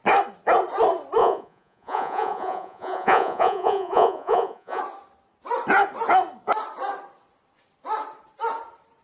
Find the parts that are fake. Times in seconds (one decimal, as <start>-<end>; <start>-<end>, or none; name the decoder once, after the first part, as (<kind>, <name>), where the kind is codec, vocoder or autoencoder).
1.2-4.8 (vocoder, Vocos)